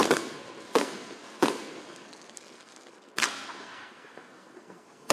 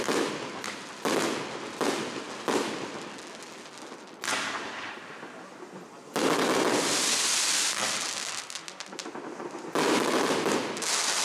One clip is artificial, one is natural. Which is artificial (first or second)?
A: first